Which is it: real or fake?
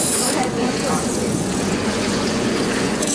fake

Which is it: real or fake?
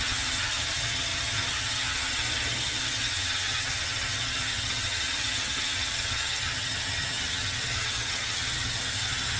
fake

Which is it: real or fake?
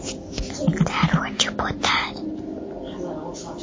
real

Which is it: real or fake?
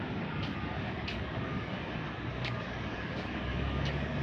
fake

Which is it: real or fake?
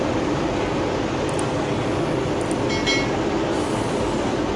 real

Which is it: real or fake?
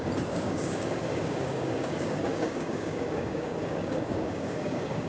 fake